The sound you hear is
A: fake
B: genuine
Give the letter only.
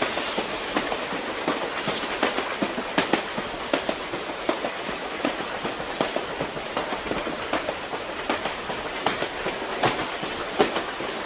B